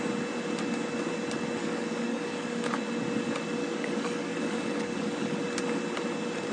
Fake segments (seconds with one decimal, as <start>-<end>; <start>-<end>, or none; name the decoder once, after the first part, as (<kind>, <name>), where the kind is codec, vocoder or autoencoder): 1.6-2.8 (codec, DAC); 3.6-5.4

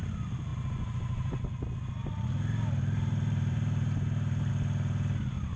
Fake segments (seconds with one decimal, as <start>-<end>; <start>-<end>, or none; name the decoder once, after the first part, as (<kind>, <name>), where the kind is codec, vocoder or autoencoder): 0.5-1.5 (vocoder, BigVGAN v2); 2.0-4.5

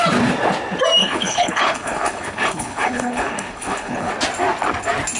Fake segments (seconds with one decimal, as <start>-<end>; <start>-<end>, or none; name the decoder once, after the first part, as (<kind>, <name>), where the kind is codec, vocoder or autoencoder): 1.0-4.1 (codec, HILCodec)